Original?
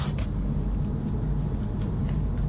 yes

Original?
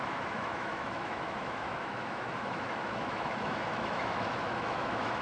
no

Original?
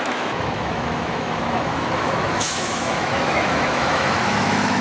no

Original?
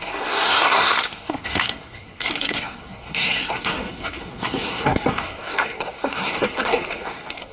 no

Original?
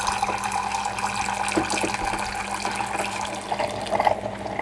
yes